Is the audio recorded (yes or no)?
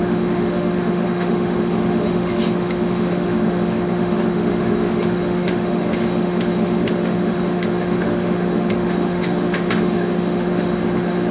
no